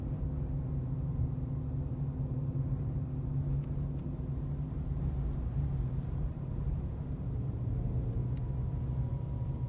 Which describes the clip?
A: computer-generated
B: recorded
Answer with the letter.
B